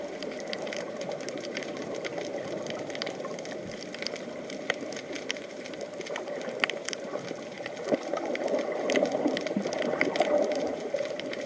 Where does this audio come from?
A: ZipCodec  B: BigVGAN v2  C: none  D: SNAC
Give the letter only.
C